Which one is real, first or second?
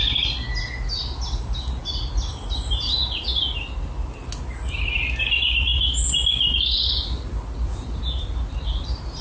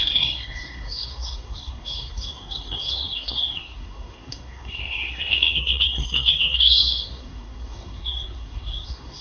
first